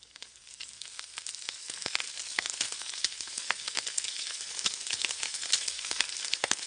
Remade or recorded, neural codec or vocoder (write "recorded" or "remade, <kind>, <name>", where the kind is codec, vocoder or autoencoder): remade, codec, SNAC